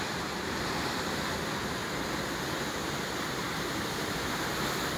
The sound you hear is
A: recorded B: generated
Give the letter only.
A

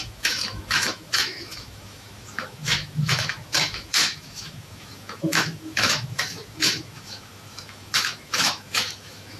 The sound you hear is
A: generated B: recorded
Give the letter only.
A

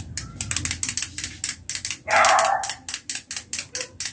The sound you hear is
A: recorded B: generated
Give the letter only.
A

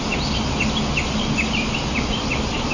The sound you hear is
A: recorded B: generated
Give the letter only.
A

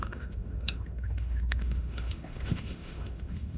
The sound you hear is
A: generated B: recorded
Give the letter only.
A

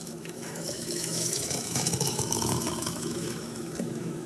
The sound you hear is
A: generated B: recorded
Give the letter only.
A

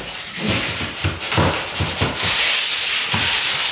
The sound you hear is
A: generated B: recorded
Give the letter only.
B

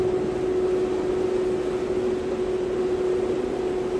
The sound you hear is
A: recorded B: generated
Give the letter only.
A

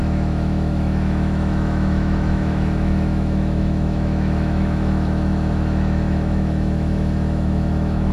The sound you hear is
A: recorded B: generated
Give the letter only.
B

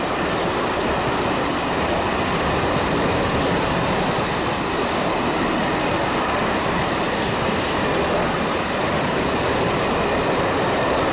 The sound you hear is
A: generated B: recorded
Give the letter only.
B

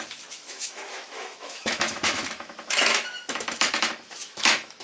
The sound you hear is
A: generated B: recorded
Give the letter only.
A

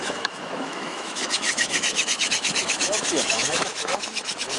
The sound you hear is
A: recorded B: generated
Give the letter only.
B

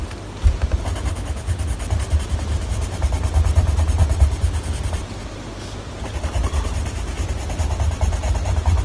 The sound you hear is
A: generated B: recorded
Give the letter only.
B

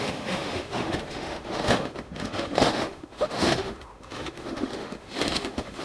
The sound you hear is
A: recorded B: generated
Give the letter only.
B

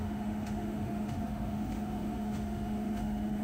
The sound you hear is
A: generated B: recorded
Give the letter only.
A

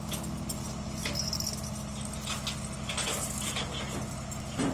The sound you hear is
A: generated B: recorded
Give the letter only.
B